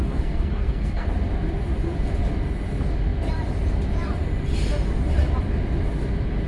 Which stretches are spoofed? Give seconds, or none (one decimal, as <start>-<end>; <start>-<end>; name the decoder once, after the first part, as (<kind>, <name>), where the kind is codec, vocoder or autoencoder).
0.0-1.1 (codec, SNAC)